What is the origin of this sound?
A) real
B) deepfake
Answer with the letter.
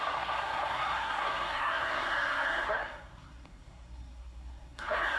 B